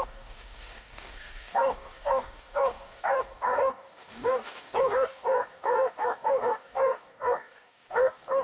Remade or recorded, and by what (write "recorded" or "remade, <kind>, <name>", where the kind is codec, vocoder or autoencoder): remade, codec, DAC